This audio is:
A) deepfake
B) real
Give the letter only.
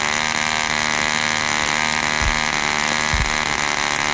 B